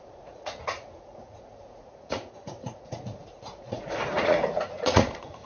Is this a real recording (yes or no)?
no